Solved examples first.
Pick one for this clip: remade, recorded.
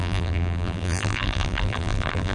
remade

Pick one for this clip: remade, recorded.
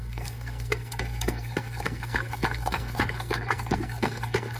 remade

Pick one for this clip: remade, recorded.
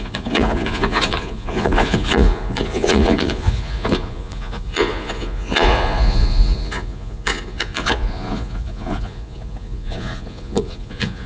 remade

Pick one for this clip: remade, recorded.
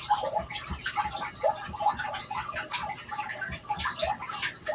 recorded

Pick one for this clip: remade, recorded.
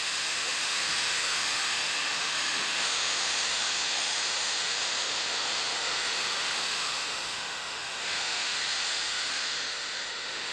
remade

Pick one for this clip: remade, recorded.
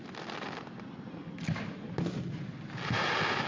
recorded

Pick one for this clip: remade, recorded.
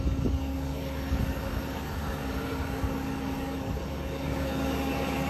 remade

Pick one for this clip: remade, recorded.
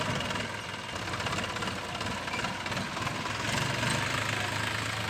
recorded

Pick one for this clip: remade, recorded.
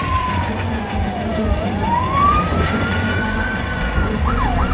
remade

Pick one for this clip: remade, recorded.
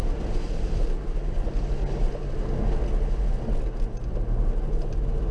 recorded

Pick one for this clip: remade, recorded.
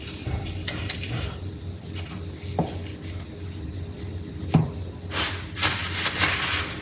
recorded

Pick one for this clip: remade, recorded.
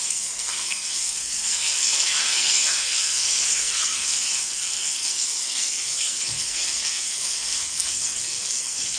remade